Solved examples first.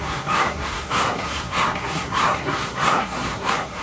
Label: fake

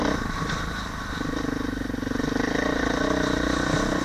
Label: real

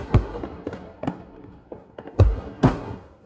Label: fake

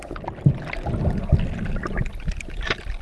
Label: real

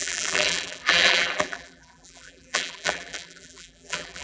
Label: fake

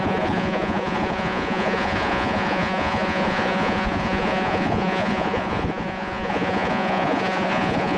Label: fake